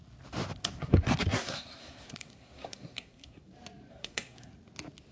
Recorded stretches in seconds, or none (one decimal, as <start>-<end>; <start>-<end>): 0.0-0.8; 3.4-3.9; 4.5-5.1